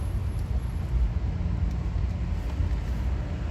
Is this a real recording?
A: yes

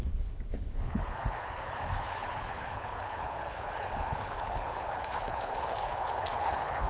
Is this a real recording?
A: no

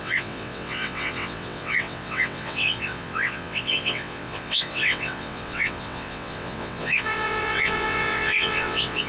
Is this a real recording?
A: no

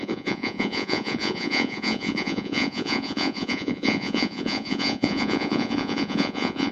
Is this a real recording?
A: no